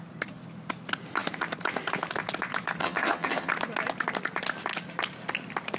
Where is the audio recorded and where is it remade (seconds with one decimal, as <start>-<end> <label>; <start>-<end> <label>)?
0.0-2.8 recorded; 2.8-3.5 remade; 3.5-5.8 recorded